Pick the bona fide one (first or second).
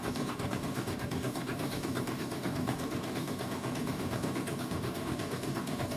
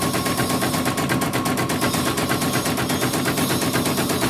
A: second